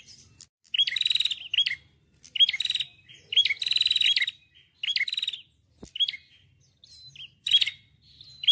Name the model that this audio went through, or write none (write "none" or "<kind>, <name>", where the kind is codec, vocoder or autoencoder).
none